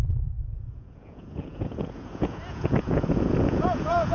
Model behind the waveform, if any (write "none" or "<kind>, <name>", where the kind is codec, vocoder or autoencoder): vocoder, Vocos